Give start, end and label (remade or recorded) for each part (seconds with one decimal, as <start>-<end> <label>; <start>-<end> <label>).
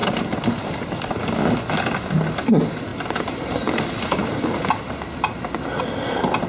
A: 0.0-0.9 remade; 0.9-2.9 recorded; 2.9-3.8 remade; 3.8-4.2 recorded; 4.2-4.7 remade; 4.7-6.5 recorded